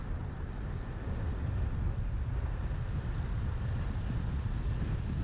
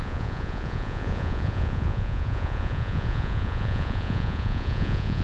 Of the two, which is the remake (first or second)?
second